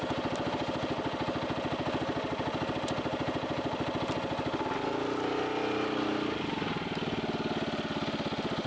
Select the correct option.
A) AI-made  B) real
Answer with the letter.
B